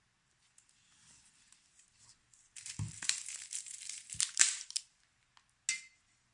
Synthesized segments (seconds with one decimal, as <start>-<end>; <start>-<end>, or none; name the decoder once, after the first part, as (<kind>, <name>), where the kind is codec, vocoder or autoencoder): 3.0-4.7 (vocoder, BigVGAN v2)